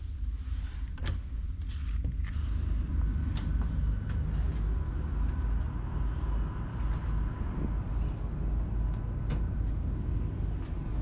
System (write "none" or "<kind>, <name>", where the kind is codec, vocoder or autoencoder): none